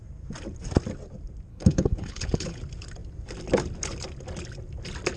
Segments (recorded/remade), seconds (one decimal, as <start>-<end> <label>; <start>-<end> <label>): 0.0-1.5 recorded; 1.5-2.6 remade; 2.6-5.2 recorded